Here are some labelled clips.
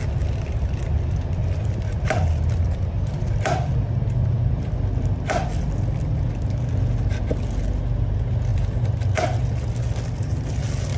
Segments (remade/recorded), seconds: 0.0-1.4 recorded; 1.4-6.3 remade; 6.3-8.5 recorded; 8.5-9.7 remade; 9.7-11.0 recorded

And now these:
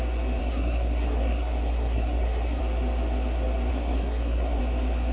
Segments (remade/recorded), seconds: 0.0-0.4 recorded; 0.4-2.6 remade; 2.6-3.7 recorded; 3.7-4.6 remade; 4.6-5.1 recorded

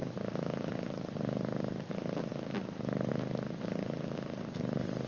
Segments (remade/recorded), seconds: 0.0-5.1 recorded

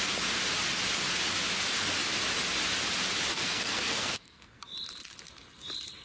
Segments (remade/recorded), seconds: 0.0-3.3 recorded; 3.3-4.6 remade; 4.6-6.0 recorded

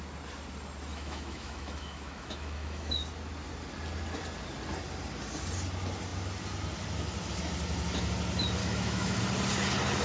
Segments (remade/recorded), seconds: 0.0-0.9 recorded; 0.9-2.9 remade; 2.9-8.6 recorded; 8.6-9.2 remade; 9.2-10.0 recorded

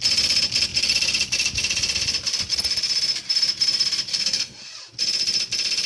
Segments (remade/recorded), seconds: 0.0-4.1 recorded; 4.1-4.7 remade; 4.7-5.9 recorded

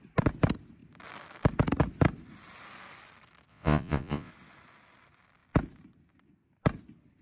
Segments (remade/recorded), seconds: 0.0-3.5 recorded; 3.5-4.3 remade; 4.3-7.2 recorded

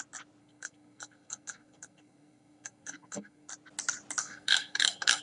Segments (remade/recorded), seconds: 0.0-0.4 recorded; 0.4-3.5 remade; 3.5-4.2 recorded; 4.2-5.2 remade